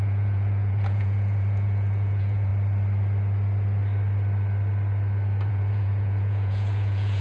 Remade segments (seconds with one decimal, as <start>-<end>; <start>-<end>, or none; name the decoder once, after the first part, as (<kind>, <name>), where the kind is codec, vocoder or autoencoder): 0.0-2.5 (vocoder, Vocos); 5.5-7.2